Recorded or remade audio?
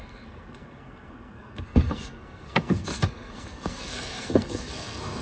remade